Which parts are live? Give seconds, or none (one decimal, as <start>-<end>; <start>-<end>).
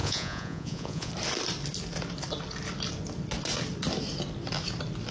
1.1-5.1